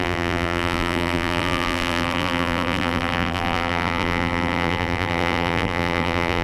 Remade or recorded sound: remade